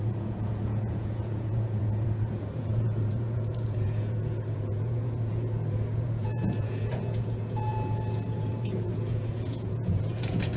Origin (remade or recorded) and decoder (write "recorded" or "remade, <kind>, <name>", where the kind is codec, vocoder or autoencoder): remade, vocoder, Vocos